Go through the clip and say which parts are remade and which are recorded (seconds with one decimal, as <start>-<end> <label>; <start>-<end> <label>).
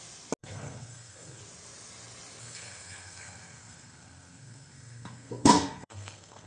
0.0-0.4 recorded; 0.4-1.4 remade; 1.4-2.4 recorded; 2.4-6.5 remade